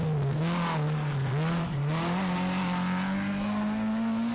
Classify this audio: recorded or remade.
recorded